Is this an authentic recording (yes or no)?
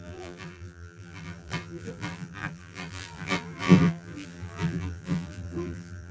no